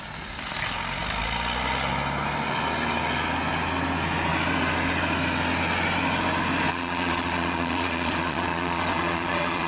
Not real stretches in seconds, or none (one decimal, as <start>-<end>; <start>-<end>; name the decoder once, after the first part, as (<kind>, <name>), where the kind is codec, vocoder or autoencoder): 6.7-9.7 (vocoder, Vocos)